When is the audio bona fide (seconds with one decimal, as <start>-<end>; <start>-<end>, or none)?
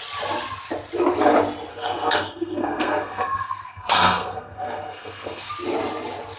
0.0-1.7; 5.5-6.4